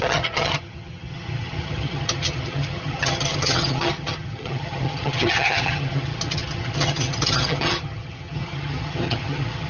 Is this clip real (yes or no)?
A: no